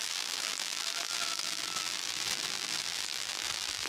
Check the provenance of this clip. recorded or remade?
remade